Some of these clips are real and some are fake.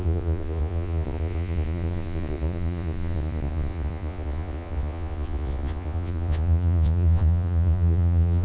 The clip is fake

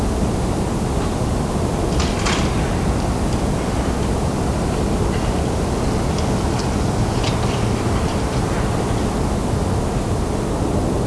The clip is real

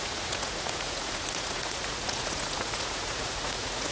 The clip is fake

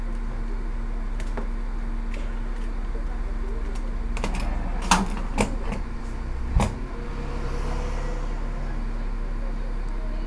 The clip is real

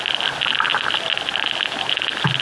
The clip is real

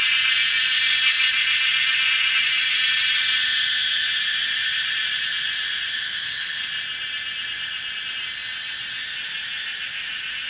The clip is real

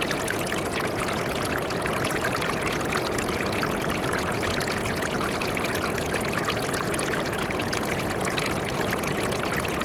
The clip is fake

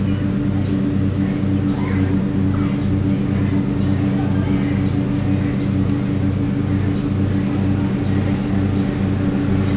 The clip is real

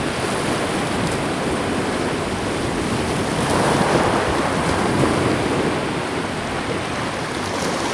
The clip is real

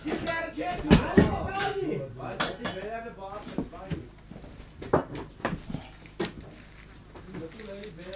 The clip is real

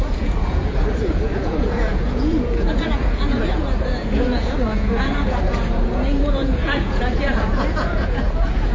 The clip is fake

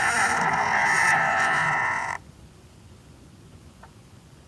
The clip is fake